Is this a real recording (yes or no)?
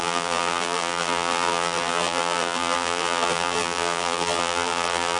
no